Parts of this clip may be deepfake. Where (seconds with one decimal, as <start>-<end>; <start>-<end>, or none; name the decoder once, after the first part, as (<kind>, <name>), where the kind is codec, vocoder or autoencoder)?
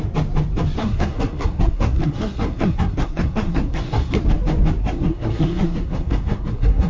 0.8-4.2 (codec, SNAC); 4.8-6.9